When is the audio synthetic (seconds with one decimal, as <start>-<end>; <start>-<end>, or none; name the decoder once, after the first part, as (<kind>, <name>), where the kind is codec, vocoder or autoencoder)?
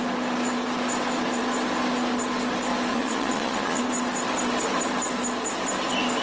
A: 2.9-3.8 (vocoder, Vocos)